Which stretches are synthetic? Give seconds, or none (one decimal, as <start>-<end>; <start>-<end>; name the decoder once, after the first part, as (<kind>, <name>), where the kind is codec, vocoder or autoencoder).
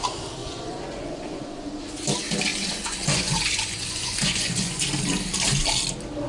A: 0.4-1.9 (vocoder, Vocos); 2.5-4.8